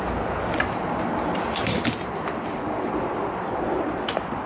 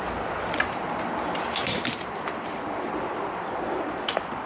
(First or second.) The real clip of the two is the first